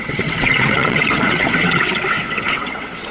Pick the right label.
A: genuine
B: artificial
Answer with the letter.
B